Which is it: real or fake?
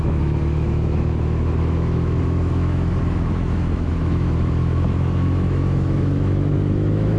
fake